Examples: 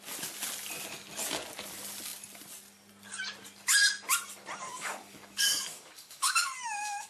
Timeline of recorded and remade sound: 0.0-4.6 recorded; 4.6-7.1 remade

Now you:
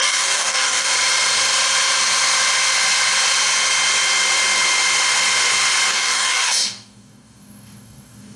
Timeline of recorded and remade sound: 0.0-0.9 remade; 0.9-5.9 recorded; 5.9-8.4 remade

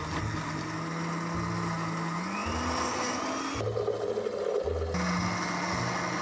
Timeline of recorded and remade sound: 0.0-6.2 recorded

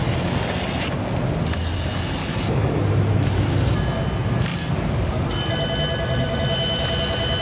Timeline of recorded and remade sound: 0.0-2.2 recorded; 2.2-2.8 remade; 2.8-7.4 recorded

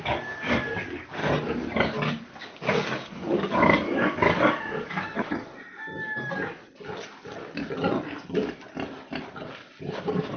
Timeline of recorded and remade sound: 0.0-1.2 remade; 1.2-2.4 recorded; 2.4-5.5 remade; 5.5-9.8 recorded; 9.8-10.4 remade